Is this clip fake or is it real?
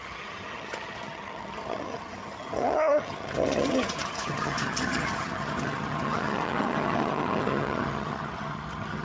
fake